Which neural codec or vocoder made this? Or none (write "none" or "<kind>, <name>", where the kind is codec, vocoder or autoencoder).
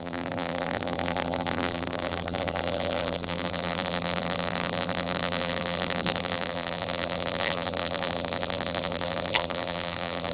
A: vocoder, BigVGAN v2